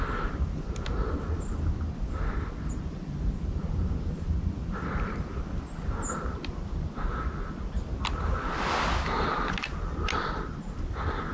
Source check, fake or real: real